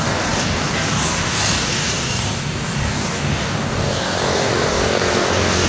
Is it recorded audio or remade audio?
remade